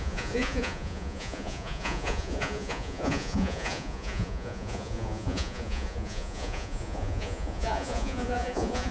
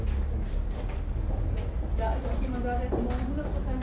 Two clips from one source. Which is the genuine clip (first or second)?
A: second